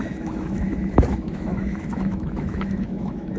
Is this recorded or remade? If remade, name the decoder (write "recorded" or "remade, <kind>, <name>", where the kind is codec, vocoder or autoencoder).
remade, autoencoder, DAC-VAE